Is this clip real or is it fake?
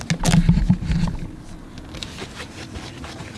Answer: real